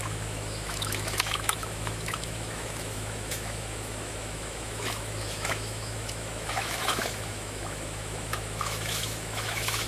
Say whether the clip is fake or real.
fake